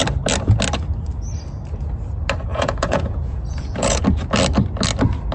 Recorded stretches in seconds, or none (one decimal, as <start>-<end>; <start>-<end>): 0.0-2.5; 4.0-5.3

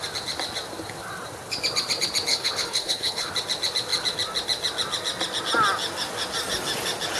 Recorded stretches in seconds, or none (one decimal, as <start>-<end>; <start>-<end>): 0.0-2.3; 3.3-7.2

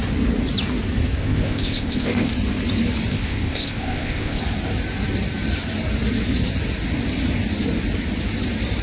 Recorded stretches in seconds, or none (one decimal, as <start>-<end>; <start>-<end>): 0.0-1.2; 2.3-3.1; 4.4-8.8

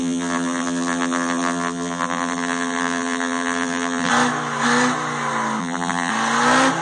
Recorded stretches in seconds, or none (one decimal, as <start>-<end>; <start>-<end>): 4.1-5.6; 6.1-6.8